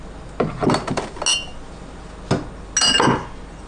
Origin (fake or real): real